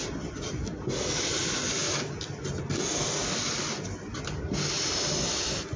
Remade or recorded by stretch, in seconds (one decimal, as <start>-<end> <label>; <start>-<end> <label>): 0.0-5.8 recorded